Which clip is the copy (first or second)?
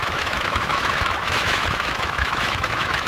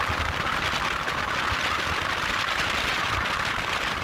first